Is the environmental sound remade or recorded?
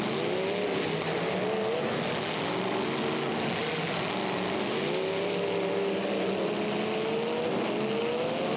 recorded